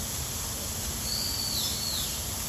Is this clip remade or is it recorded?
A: recorded